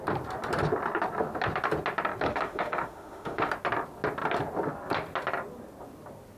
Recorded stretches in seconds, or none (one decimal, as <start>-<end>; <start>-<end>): 0.0-2.3; 3.5-6.4